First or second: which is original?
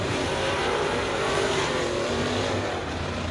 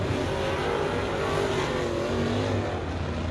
second